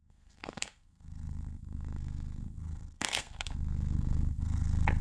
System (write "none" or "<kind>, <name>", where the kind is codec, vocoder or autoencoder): codec, SNAC